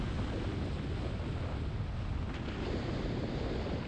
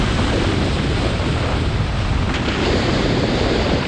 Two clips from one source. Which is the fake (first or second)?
second